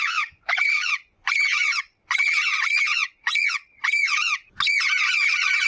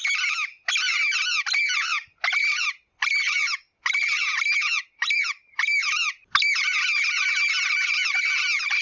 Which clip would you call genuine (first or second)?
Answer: second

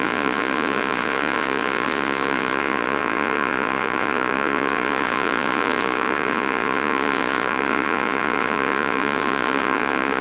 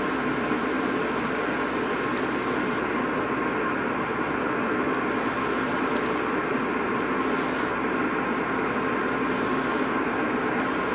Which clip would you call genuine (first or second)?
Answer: second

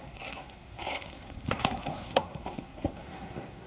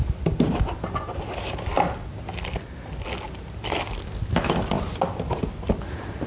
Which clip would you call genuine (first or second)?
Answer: second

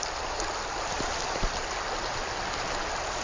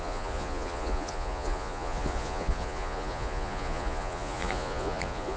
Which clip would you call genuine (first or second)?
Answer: first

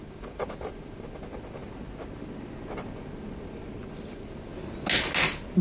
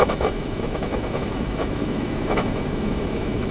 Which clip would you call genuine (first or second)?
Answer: first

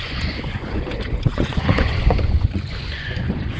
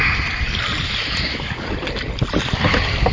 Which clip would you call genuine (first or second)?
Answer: second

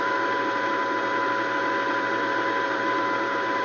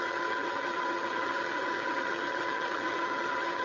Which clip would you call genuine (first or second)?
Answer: first